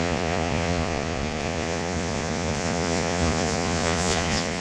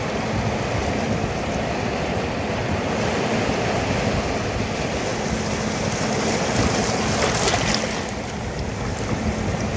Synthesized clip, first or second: first